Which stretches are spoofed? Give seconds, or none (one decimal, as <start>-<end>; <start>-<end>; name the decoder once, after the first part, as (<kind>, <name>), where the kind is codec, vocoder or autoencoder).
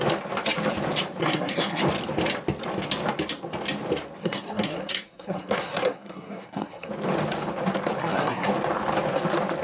1.2-1.8 (codec, SNAC); 4.2-6.9; 8.0-8.5